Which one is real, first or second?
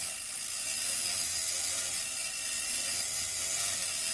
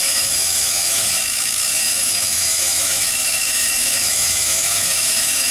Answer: first